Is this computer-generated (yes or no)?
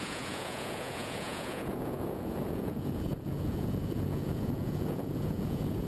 yes